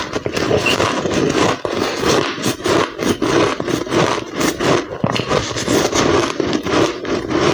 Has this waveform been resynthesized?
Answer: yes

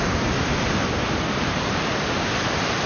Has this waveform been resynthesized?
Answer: yes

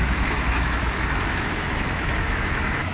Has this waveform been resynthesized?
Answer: yes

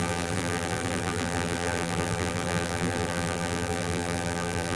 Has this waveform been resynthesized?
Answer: yes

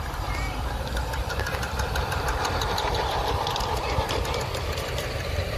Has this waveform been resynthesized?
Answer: yes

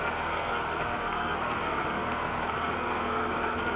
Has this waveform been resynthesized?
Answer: yes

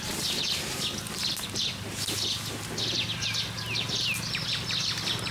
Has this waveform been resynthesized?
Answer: no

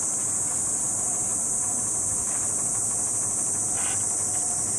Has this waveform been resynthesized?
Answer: no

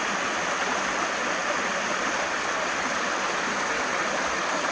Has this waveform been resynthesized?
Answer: no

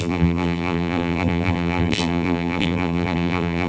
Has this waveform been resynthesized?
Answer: yes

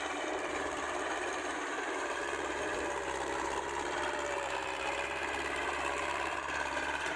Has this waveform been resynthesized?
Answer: yes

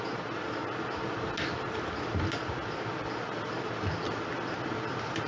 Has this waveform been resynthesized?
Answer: no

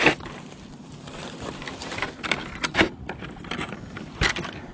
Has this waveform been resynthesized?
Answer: no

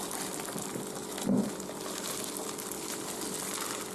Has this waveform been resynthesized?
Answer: no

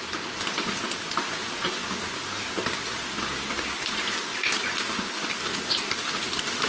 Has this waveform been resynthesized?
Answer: yes